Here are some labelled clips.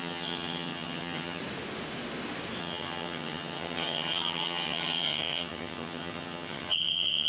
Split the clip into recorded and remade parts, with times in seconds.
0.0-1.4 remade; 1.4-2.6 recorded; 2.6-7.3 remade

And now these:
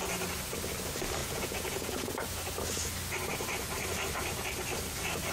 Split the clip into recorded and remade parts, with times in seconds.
0.0-1.2 recorded; 1.2-2.1 remade; 2.1-5.3 recorded

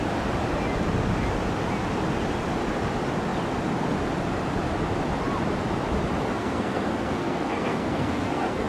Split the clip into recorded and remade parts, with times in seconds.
0.0-6.3 recorded; 6.3-8.7 remade